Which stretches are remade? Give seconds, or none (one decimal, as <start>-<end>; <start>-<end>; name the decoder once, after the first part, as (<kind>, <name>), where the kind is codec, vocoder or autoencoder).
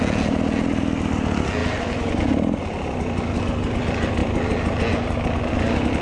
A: none